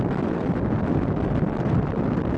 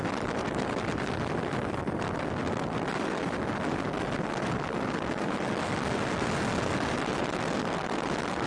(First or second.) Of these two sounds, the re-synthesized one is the first